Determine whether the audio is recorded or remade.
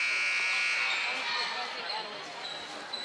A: recorded